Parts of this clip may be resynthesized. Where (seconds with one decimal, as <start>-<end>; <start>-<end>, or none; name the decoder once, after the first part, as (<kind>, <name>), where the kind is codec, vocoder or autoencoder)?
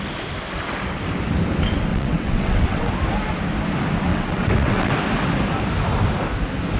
1.9-2.9 (vocoder, WaveNeXt); 4.1-4.9